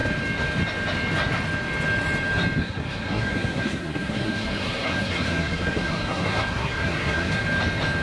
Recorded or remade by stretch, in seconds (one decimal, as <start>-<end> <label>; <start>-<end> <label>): 0.0-2.6 recorded; 2.6-7.4 remade; 7.4-8.0 recorded